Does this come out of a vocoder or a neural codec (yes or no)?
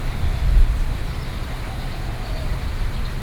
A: yes